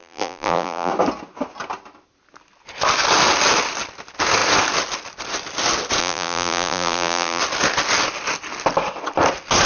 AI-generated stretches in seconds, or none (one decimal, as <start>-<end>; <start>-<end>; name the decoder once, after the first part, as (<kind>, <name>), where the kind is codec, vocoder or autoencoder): 0.0-0.9 (vocoder, BigVGAN v2); 6.0-7.4